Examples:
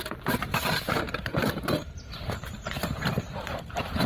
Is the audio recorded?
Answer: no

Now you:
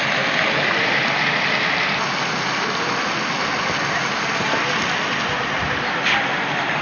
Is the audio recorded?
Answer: yes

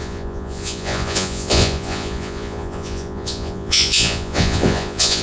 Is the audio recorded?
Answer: no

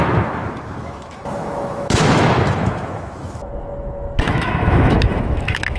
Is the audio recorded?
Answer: no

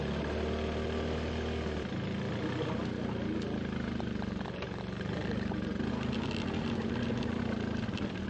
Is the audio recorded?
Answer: yes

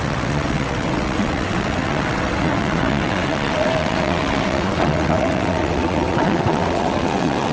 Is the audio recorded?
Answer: no